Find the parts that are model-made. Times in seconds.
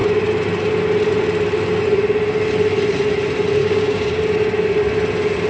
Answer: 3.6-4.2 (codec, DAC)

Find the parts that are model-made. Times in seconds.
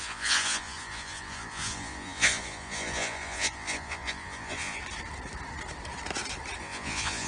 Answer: 0.0-4.8 (vocoder, Vocos); 6.6-7.3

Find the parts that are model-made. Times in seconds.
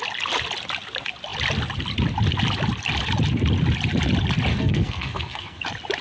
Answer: 4.5-5.6 (codec, SNAC)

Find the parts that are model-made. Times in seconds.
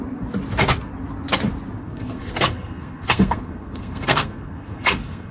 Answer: 1.8-5.3 (codec, SNAC)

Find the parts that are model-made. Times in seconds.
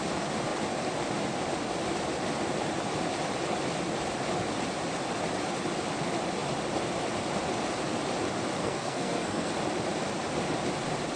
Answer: 8.6-9.5 (codec, SNAC)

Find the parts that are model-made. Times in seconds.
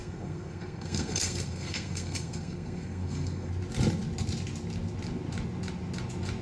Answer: 0.0-3.5 (codec, SNAC)